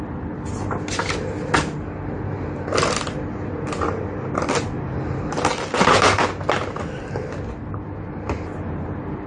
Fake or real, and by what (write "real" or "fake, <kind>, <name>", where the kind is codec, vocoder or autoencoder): real